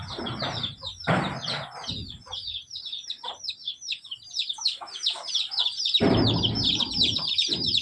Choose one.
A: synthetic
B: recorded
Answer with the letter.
B